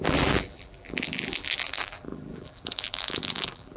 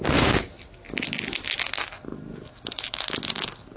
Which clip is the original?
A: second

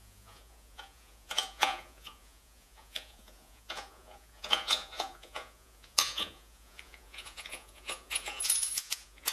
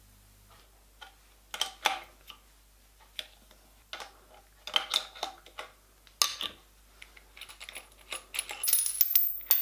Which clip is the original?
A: second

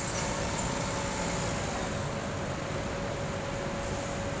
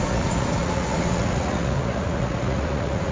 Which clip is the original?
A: first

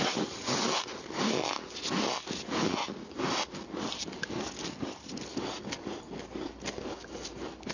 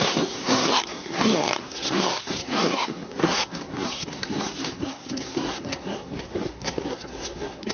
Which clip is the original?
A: first